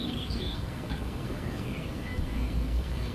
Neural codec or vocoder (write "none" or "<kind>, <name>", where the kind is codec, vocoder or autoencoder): codec, SNAC